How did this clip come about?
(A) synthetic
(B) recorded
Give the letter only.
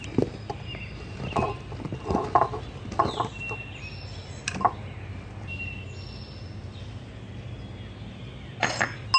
B